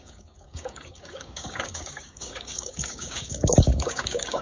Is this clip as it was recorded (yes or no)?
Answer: no